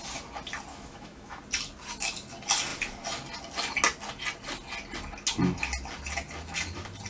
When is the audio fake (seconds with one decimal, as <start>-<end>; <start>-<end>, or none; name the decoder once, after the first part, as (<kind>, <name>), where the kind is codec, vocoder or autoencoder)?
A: 0.7-1.4 (autoencoder, DAC-VAE)

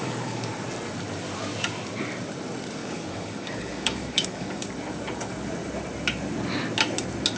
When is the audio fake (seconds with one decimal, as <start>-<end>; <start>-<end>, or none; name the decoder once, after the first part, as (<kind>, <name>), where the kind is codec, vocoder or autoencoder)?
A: 0.0-0.5 (codec, DAC); 2.8-4.7

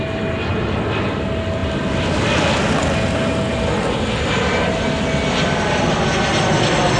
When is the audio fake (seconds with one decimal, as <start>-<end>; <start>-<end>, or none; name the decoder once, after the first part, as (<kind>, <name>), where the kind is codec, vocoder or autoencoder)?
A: none

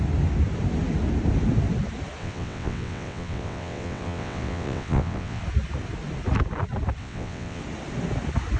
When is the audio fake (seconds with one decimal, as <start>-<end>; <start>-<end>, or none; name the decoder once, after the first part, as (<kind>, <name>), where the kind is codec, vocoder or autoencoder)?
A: 2.2-5.4 (vocoder, WaveNeXt); 7.0-7.6